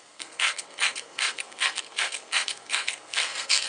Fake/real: fake